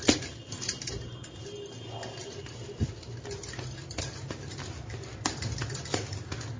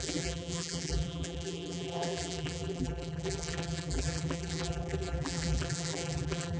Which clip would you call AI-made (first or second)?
second